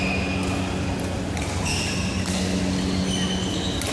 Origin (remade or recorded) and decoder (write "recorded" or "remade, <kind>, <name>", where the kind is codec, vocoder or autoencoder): recorded